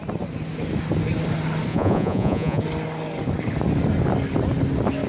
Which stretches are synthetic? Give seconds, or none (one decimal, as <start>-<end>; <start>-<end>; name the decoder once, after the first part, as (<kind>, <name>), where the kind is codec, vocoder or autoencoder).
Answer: 1.7-2.6 (vocoder, Vocos)

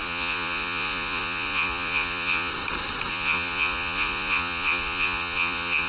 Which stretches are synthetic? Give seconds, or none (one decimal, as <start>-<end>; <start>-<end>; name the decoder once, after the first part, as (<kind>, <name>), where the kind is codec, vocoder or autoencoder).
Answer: 0.0-2.5 (vocoder, Vocos); 3.1-5.9

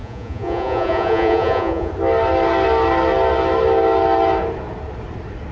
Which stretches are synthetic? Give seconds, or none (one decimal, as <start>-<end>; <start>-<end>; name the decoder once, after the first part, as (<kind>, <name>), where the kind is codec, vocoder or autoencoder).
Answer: 0.0-1.9 (vocoder, Vocos)

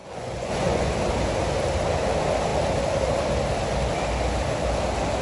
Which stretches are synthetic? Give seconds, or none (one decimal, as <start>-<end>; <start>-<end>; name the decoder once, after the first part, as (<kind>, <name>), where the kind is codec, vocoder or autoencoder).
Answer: 0.0-0.9 (vocoder, Vocos)

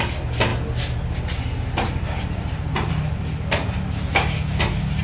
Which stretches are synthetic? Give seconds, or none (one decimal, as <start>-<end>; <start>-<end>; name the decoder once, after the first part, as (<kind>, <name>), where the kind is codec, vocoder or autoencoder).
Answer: none

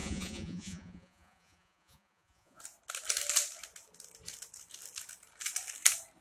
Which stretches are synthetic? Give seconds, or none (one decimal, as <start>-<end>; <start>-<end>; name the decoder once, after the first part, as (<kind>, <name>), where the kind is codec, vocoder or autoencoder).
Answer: 0.0-2.6 (vocoder, Vocos)

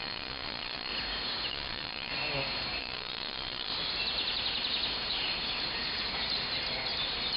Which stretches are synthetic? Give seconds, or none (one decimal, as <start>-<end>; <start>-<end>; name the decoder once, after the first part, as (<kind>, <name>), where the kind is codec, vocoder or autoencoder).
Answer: 0.0-0.9 (vocoder, Vocos); 1.5-2.1; 2.8-3.7

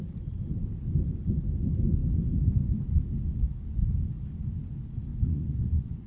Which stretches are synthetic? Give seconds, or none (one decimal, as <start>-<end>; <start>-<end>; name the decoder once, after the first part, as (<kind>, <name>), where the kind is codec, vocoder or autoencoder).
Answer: 5.1-6.1 (vocoder, Vocos)